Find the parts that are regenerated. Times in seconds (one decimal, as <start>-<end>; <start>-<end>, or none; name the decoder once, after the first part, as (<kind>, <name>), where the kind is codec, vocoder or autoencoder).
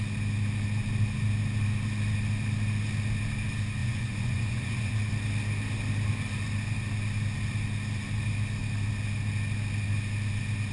3.8-5.1 (vocoder, Vocos)